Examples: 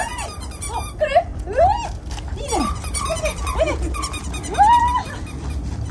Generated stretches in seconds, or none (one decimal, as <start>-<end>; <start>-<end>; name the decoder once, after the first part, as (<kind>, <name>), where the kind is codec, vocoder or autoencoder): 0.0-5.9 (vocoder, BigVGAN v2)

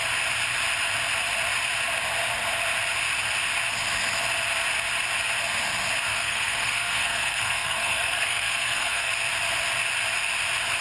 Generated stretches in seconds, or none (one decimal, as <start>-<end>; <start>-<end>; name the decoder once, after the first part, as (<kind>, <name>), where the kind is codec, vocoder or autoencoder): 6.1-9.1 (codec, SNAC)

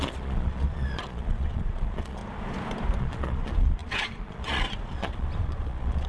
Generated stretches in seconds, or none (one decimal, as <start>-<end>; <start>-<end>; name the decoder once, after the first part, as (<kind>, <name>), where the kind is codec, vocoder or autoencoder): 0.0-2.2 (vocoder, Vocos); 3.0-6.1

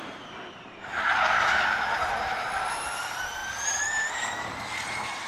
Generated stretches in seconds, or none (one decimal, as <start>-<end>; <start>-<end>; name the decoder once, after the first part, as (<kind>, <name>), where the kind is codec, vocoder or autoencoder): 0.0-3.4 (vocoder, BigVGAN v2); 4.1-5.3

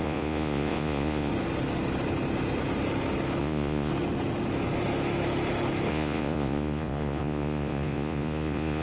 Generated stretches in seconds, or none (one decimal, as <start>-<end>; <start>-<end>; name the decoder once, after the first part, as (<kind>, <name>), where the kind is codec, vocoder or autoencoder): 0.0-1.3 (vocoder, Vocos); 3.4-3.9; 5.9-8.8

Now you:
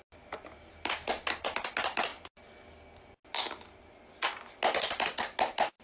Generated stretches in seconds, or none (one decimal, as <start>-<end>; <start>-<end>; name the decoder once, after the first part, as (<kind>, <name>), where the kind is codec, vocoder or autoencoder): none

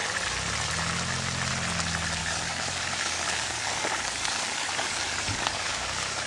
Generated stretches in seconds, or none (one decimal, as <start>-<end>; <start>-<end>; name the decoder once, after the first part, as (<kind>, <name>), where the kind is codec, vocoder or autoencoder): 2.2-6.3 (codec, DAC)